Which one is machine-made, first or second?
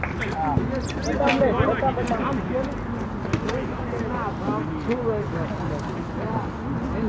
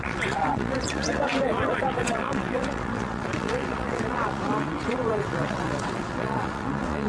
second